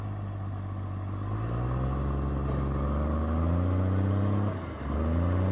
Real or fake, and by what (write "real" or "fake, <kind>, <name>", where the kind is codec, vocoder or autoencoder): real